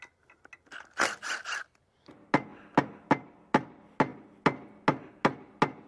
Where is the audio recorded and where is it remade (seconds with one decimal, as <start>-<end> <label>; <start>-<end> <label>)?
0.0-5.9 recorded